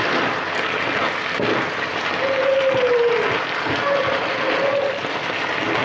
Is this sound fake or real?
real